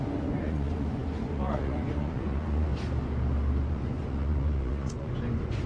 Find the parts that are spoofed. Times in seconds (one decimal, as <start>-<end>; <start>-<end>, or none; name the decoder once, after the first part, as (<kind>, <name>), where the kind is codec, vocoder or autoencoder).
0.0-2.7 (vocoder, Vocos); 3.7-5.7